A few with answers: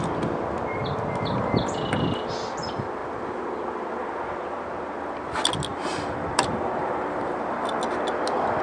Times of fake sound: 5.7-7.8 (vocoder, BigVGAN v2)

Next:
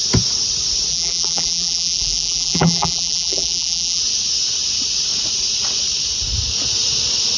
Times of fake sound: 0.9-4.0 (vocoder, BigVGAN v2)

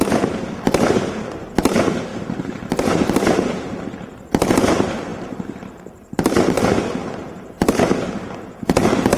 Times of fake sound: 2.1-3.8 (vocoder, BigVGAN v2); 5.1-6.6

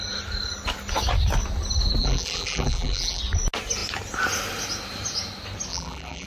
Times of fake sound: 2.0-3.2 (vocoder, BigVGAN v2); 5.7-6.3